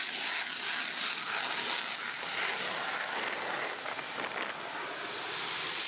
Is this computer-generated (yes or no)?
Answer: no